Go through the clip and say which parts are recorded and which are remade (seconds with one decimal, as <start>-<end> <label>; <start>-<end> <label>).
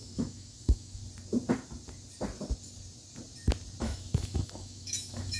0.0-1.0 remade; 1.0-3.8 recorded; 3.8-5.4 remade